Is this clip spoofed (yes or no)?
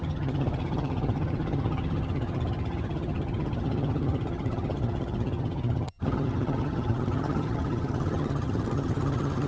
yes